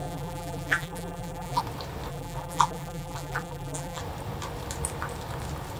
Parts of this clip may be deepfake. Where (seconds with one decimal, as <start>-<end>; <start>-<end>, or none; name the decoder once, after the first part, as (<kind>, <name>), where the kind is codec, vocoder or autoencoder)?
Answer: 0.0-1.6 (vocoder, BigVGAN v2); 2.1-4.0